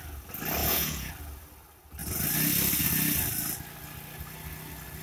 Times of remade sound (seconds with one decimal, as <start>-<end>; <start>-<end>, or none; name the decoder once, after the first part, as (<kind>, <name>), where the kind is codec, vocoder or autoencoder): 0.6-1.1 (vocoder, Vocos)